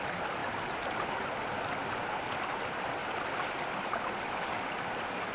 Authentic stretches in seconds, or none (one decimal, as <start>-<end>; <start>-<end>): 0.0-0.4; 1.5-3.0; 4.5-5.3